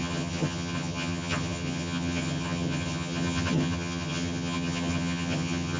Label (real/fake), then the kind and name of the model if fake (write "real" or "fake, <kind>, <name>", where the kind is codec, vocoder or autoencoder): fake, vocoder, HiFi-GAN